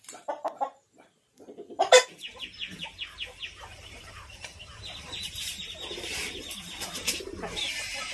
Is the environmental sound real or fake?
fake